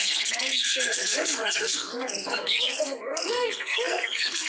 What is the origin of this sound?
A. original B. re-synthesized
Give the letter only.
B